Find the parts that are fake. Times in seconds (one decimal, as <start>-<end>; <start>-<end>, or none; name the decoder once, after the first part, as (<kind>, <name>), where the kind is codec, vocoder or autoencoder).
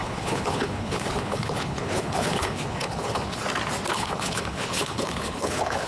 0.0-3.4 (codec, HILCodec); 3.9-5.9